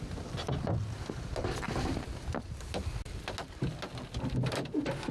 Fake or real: real